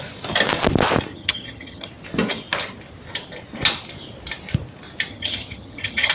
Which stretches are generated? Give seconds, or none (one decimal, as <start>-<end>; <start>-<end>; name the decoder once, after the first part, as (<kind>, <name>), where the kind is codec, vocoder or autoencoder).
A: 1.1-1.9 (vocoder, HiFi-GAN); 5.1-6.1